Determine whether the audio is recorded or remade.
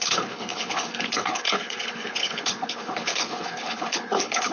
remade